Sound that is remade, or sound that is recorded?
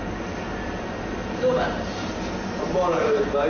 remade